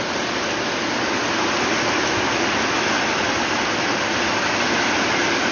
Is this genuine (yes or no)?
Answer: yes